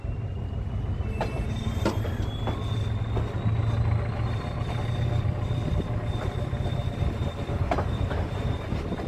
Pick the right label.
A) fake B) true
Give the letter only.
B